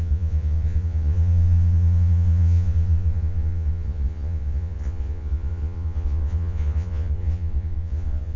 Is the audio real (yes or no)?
no